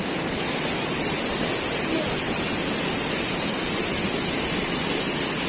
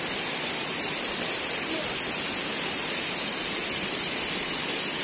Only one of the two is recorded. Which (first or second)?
first